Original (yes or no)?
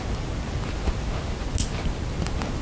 yes